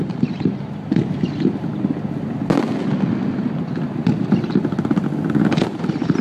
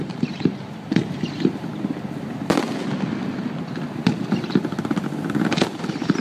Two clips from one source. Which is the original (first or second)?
first